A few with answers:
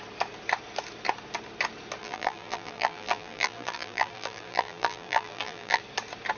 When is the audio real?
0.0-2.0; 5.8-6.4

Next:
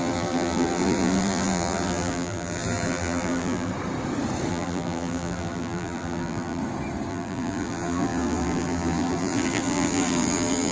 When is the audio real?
3.7-4.5; 6.6-7.1

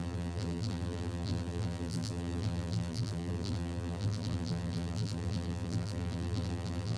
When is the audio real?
none

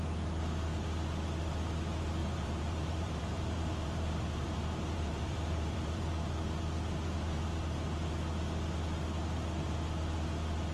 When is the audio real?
0.0-2.2; 6.1-10.7

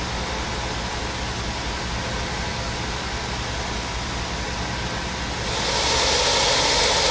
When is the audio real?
0.0-7.1

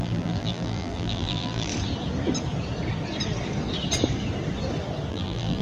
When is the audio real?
1.7-5.1